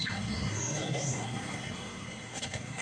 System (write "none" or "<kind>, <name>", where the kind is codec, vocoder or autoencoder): codec, SNAC